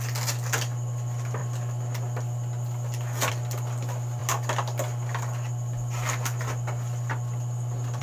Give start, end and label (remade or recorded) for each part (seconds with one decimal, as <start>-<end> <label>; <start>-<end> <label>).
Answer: 0.0-8.0 recorded